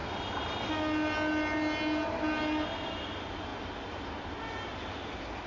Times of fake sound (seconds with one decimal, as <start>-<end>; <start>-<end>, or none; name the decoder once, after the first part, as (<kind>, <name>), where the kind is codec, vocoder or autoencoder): none